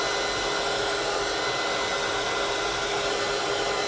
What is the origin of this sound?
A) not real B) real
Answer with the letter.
B